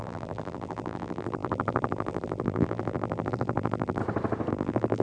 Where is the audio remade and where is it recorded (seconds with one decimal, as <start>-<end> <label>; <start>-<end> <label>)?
0.0-4.0 remade; 4.0-4.5 recorded; 4.5-5.0 remade